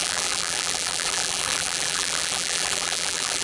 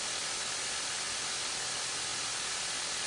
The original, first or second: second